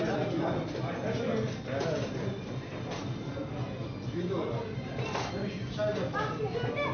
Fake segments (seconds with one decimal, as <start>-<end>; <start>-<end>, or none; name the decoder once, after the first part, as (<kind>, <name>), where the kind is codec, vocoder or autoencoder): none